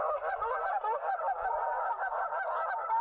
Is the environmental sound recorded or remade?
recorded